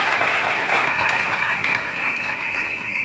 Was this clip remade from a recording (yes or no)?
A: yes